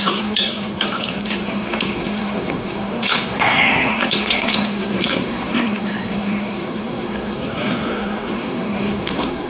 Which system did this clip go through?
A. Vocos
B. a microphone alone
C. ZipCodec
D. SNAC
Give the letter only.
D